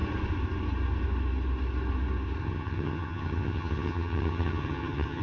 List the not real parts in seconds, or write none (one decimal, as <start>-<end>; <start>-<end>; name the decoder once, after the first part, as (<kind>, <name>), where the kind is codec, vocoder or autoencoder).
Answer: 2.4-5.2 (vocoder, HiFi-GAN)